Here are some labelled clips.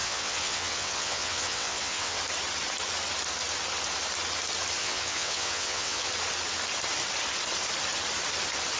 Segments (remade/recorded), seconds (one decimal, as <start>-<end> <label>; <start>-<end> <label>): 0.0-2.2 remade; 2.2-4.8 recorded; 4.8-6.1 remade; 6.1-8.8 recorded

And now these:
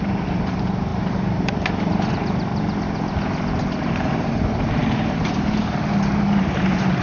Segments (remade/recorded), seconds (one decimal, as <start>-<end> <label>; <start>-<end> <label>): 0.0-2.5 remade; 2.5-3.8 recorded; 3.8-7.0 remade

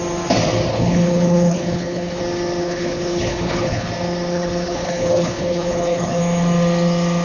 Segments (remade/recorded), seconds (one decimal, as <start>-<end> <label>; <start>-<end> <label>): 0.0-0.7 recorded; 0.7-2.2 remade; 2.2-2.6 recorded; 2.6-3.9 remade; 3.9-4.3 recorded; 4.3-6.2 remade; 6.2-7.2 recorded

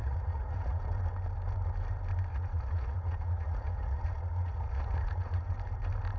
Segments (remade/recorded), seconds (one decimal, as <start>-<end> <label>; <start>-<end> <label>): 0.0-0.8 remade; 0.8-2.3 recorded; 2.3-5.5 remade; 5.5-6.2 recorded

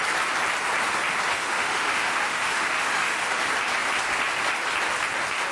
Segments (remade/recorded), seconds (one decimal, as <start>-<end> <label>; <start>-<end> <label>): 0.0-1.3 recorded; 1.3-3.4 remade; 3.4-5.5 recorded

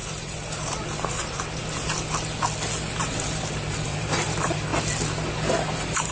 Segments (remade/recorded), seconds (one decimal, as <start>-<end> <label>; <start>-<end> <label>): 0.0-1.6 remade; 1.6-3.0 recorded; 3.0-4.7 remade; 4.7-5.5 recorded; 5.5-6.1 remade

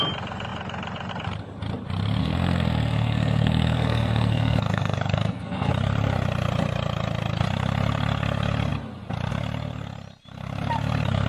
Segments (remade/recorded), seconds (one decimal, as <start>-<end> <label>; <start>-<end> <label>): 0.0-2.2 recorded; 2.2-5.7 remade; 5.7-11.3 recorded

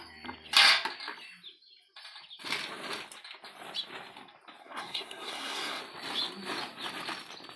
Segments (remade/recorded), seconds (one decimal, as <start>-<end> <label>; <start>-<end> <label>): 0.0-4.6 recorded; 4.6-5.8 remade; 5.8-7.6 recorded